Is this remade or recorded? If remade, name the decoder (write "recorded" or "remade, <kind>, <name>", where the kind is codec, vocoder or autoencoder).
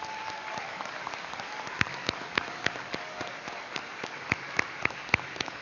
remade, codec, DAC